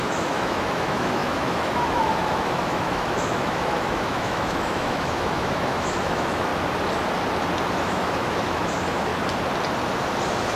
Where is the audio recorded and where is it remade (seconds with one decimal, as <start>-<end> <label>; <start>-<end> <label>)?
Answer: 0.0-6.5 remade; 6.5-7.8 recorded; 7.8-9.1 remade; 9.1-10.6 recorded